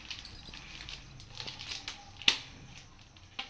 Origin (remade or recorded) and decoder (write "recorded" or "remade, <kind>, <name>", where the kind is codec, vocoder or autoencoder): recorded